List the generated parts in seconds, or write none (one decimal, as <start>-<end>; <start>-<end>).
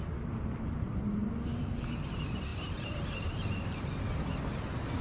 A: 2.5-3.4